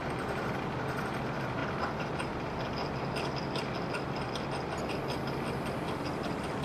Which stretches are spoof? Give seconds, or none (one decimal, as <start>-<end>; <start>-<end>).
0.0-0.5